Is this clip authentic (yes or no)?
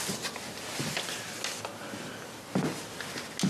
yes